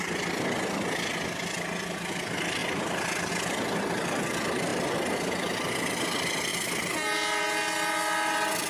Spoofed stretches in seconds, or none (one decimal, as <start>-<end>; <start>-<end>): 2.6-3.3